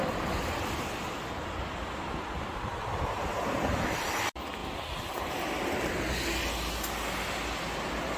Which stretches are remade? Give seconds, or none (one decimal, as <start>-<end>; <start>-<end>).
none